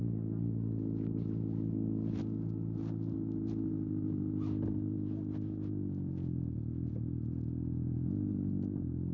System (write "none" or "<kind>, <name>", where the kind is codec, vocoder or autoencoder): none